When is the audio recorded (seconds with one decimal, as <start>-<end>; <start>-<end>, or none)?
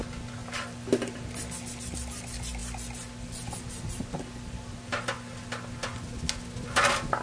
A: 0.0-7.2